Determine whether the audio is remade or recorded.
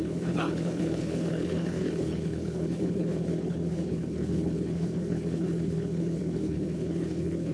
remade